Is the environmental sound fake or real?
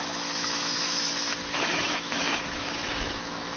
fake